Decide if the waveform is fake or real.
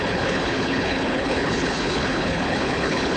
fake